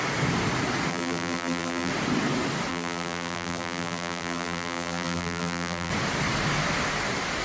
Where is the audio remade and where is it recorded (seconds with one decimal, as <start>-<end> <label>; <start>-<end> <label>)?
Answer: 0.0-0.9 recorded; 0.9-1.9 remade; 1.9-2.7 recorded; 2.7-5.9 remade; 5.9-7.4 recorded